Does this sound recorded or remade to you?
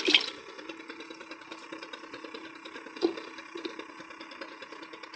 recorded